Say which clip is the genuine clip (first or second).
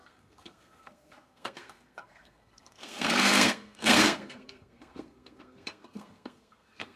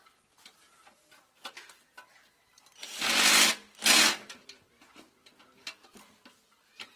second